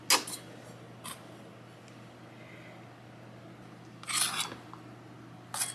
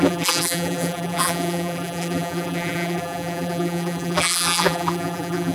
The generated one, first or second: second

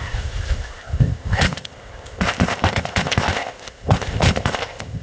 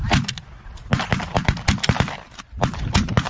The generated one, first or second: first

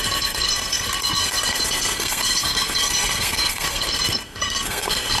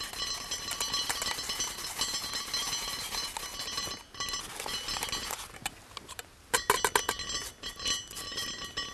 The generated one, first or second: first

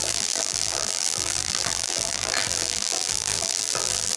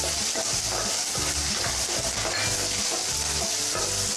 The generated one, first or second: first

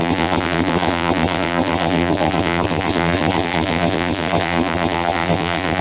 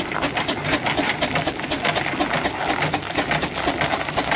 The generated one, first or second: first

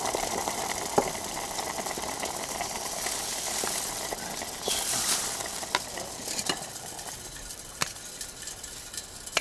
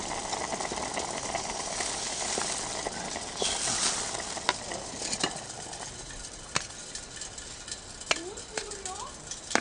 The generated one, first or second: first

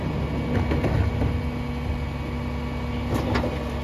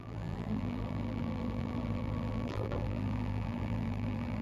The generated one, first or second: second